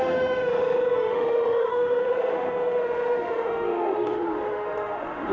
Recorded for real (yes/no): no